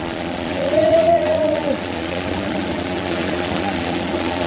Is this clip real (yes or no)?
no